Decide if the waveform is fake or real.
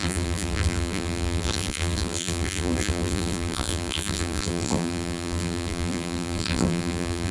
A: fake